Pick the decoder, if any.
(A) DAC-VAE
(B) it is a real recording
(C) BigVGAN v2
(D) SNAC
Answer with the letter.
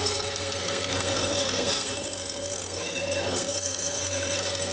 D